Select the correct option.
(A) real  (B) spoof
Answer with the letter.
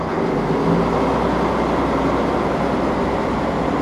A